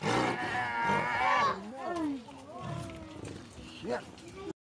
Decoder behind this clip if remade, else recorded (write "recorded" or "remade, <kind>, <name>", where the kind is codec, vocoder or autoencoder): recorded